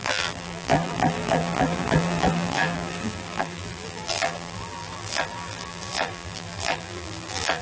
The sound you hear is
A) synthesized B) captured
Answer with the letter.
A